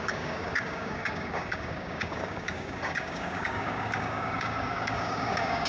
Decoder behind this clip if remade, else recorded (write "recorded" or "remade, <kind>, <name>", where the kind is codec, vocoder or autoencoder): remade, codec, DAC